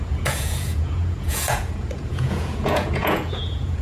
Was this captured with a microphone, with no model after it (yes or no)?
no